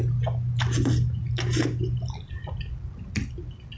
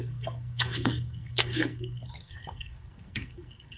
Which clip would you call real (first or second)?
first